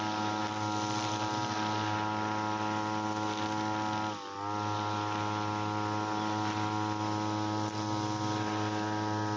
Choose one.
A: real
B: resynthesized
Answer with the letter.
A